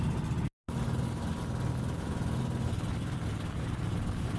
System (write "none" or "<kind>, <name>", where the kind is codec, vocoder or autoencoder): none